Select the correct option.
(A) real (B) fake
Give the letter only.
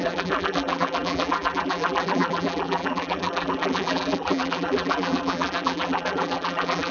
B